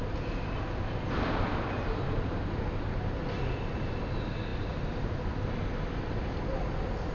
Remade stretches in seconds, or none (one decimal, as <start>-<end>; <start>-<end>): none